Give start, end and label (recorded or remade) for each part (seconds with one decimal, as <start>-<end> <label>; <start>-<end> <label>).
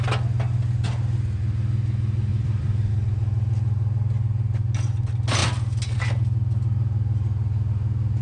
0.0-2.3 recorded; 2.3-2.9 remade; 2.9-8.2 recorded